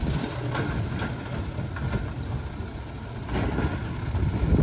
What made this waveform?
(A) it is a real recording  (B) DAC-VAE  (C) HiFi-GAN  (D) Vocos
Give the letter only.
A